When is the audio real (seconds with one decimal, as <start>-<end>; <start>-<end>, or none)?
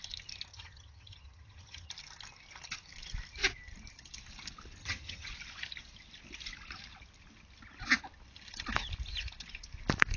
0.0-0.5; 1.9-4.8; 5.3-10.2